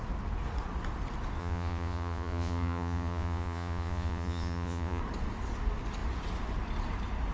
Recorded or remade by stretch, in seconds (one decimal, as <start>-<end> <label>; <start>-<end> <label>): 0.0-1.4 recorded; 1.4-5.0 remade; 5.0-7.3 recorded